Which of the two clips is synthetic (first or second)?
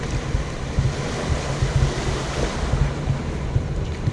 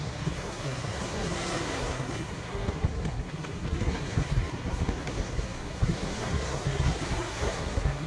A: second